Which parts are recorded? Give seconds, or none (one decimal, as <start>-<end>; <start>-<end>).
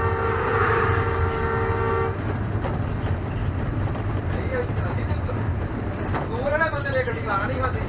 0.0-0.6; 1.4-3.4; 7.3-7.9